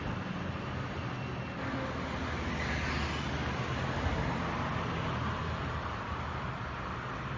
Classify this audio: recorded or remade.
recorded